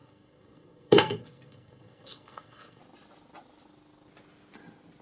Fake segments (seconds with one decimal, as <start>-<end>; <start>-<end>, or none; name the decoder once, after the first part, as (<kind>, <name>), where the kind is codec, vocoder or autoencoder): 0.0-2.8 (codec, SNAC)